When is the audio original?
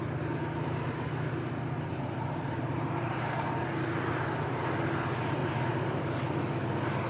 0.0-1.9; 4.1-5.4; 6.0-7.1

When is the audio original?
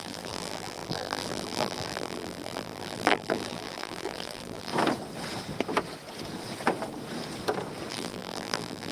4.7-7.9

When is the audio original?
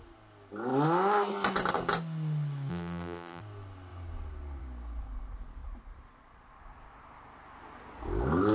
0.0-2.7; 3.4-8.5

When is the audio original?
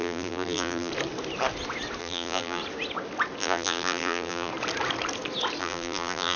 0.9-2.0; 2.6-3.4; 4.5-5.6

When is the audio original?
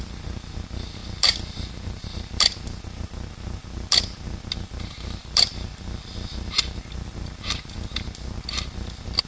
0.0-9.3